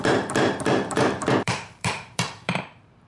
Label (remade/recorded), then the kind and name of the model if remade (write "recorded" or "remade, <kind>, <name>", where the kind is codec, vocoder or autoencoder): remade, vocoder, BigVGAN v2